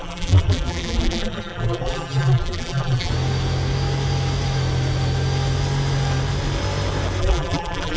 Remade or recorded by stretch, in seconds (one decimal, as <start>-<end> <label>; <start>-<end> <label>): 0.0-3.1 remade; 3.1-7.2 recorded; 7.2-8.0 remade

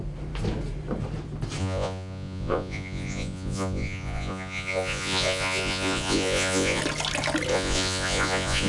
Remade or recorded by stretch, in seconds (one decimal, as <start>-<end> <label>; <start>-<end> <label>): 0.0-1.6 recorded; 1.6-6.8 remade; 6.8-7.5 recorded; 7.5-8.7 remade

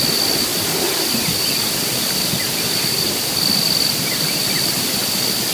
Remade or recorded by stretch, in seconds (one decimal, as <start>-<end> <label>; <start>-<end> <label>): 0.0-5.5 recorded

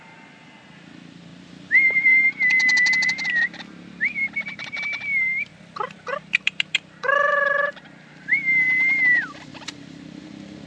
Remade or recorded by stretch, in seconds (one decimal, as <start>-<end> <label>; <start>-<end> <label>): 0.0-10.7 remade

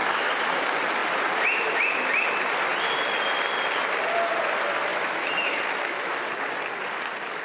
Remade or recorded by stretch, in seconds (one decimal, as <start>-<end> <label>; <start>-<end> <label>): 0.0-0.6 remade; 0.6-4.9 recorded; 4.9-6.1 remade; 6.1-7.4 recorded

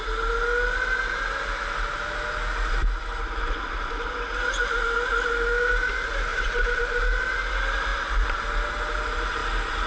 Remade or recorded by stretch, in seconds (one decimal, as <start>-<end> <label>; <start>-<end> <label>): 0.0-6.3 recorded; 6.3-6.8 remade; 6.8-7.9 recorded; 7.9-8.4 remade; 8.4-9.9 recorded